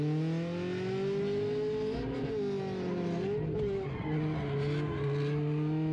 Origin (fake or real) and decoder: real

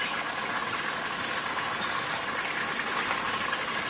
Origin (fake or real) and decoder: real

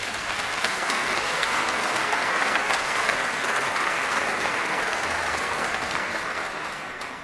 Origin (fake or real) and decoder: fake, codec, SNAC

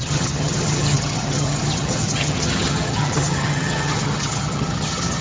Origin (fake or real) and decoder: fake, vocoder, HiFi-GAN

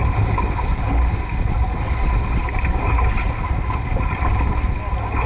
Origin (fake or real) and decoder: real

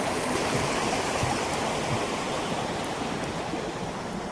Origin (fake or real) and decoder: fake, vocoder, BigVGAN v2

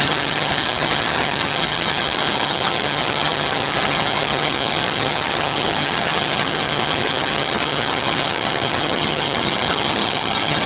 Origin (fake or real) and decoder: fake, vocoder, HiFi-GAN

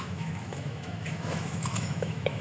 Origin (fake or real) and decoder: fake, autoencoder, DAC-VAE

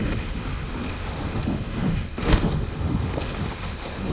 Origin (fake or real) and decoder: fake, autoencoder, DAC-VAE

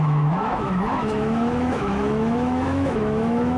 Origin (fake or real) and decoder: fake, autoencoder, DAC-VAE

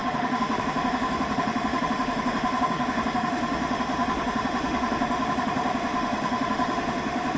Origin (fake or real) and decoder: fake, autoencoder, DAC-VAE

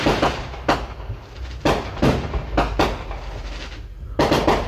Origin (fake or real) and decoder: real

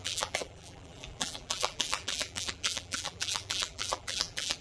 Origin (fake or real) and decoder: fake, vocoder, BigVGAN v2